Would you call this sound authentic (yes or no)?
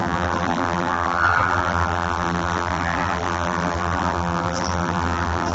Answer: no